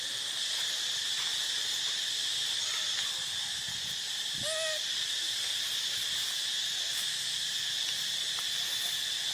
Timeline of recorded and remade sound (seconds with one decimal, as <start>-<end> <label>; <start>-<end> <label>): 0.0-9.3 recorded